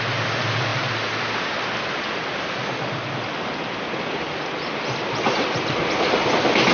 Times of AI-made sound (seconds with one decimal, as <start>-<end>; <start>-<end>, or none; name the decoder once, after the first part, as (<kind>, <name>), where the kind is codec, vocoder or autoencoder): none